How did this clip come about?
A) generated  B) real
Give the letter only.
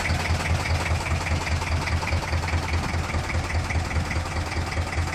B